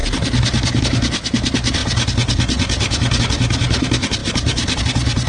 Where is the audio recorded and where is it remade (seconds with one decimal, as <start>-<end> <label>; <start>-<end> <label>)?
0.0-5.3 recorded